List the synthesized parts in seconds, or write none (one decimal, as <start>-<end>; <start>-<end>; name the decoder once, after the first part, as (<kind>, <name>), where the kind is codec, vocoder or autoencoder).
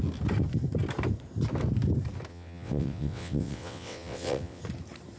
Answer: 2.3-4.6 (vocoder, WaveNeXt)